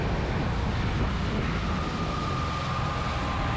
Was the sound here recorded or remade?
recorded